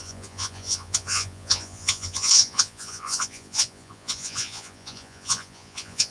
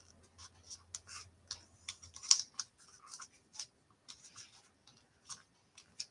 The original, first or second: second